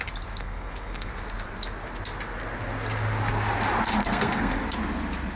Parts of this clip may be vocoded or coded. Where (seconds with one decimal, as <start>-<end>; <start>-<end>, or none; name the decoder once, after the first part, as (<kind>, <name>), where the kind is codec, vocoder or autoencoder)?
0.4-1.1 (codec, SNAC); 4.0-4.6